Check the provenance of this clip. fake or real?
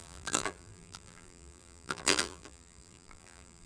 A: fake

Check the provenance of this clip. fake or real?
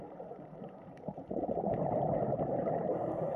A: fake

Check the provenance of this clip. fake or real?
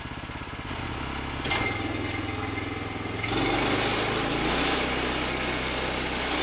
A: real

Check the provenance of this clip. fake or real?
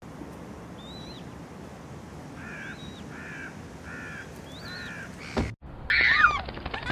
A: real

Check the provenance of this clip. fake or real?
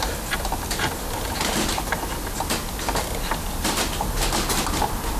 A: real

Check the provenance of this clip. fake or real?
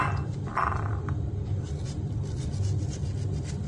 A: fake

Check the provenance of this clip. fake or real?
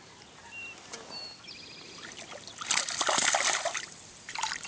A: fake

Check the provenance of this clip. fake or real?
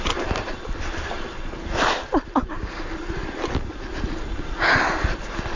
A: real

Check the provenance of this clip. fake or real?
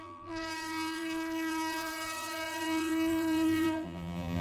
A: fake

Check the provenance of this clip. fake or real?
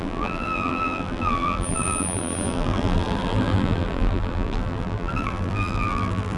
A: fake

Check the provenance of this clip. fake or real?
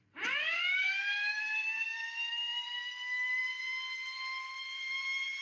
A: fake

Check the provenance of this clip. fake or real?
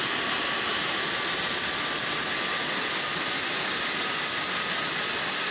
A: real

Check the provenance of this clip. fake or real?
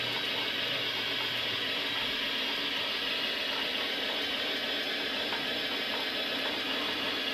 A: real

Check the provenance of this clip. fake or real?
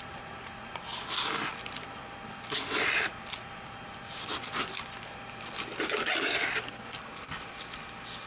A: fake